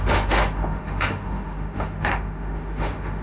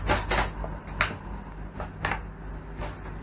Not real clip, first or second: first